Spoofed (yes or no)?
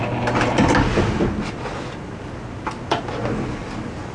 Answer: no